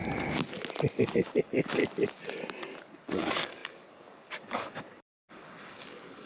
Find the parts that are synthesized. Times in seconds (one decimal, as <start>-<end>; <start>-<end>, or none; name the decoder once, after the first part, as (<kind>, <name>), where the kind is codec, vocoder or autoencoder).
1.0-1.8 (codec, DAC); 2.8-6.3